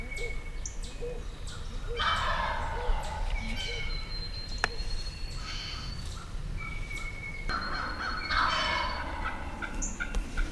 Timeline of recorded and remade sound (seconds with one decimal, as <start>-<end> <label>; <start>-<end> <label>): 0.0-5.4 recorded; 5.4-5.9 remade; 5.9-10.5 recorded